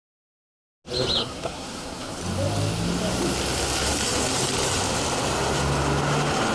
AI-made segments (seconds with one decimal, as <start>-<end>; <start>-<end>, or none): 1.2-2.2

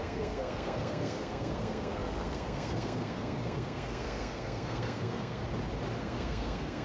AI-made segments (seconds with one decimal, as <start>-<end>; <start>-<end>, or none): 0.0-5.4; 6.0-6.8

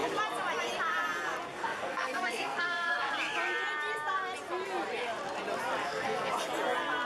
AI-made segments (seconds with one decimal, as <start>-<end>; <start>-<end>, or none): 1.6-3.1; 5.8-6.3